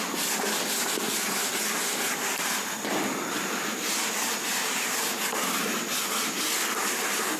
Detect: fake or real real